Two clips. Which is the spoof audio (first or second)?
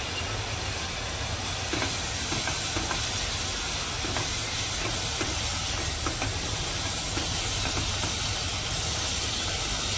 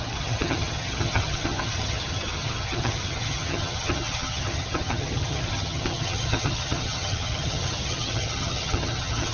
second